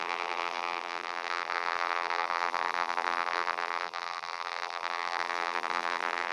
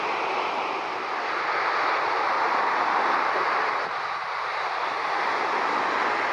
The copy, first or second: first